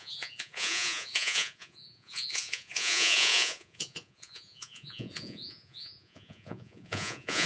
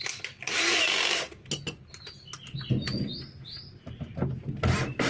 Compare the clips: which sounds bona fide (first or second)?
second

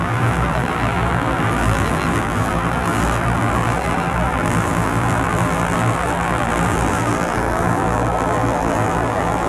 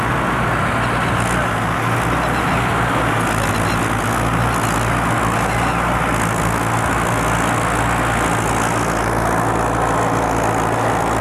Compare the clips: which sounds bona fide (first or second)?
second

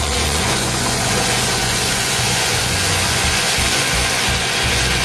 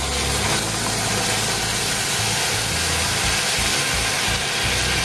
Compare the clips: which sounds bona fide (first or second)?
second